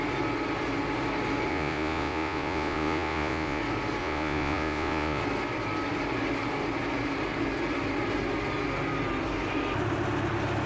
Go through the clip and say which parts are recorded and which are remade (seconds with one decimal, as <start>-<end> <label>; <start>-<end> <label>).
0.0-1.5 recorded; 1.5-3.6 remade; 3.6-4.0 recorded; 4.0-5.2 remade; 5.2-10.7 recorded